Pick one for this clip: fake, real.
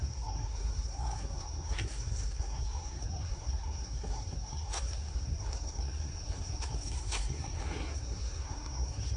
fake